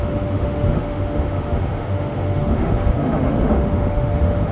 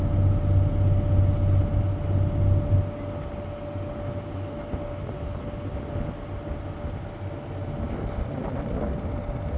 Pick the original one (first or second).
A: second